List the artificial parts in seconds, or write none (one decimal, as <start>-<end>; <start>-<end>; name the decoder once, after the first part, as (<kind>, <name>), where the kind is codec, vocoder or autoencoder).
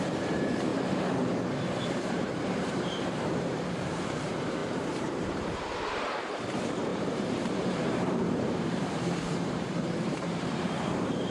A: 0.0-0.7 (vocoder, BigVGAN v2); 2.1-11.3